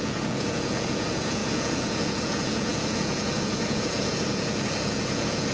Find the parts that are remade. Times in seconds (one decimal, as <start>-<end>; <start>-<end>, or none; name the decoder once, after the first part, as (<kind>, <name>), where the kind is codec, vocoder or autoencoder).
0.0-5.5 (vocoder, Vocos)